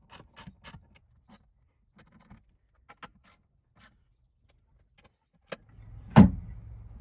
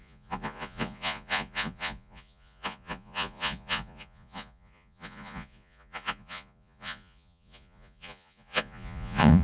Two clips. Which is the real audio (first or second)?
first